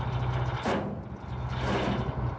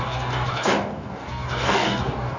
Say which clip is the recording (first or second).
first